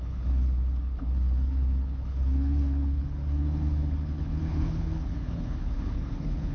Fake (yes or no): yes